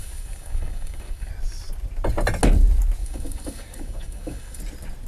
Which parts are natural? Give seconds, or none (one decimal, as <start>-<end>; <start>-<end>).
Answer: 1.3-3.0; 4.6-5.1